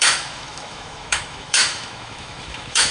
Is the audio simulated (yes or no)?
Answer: yes